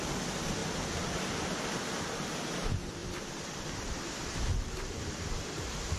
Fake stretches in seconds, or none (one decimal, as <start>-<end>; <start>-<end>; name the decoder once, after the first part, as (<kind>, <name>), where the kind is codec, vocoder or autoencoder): 0.0-4.5 (vocoder, BigVGAN v2); 5.0-6.0